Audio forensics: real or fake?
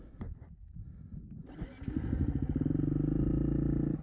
real